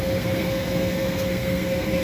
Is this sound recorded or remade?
remade